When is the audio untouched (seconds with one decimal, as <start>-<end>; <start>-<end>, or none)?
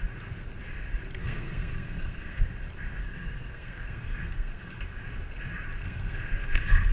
0.0-1.2; 2.4-3.0; 4.8-5.8